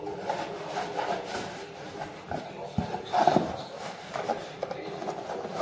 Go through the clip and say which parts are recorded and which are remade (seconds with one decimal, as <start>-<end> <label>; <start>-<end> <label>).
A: 0.0-3.6 recorded; 3.6-4.1 remade; 4.1-5.6 recorded